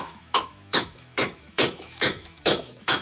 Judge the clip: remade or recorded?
remade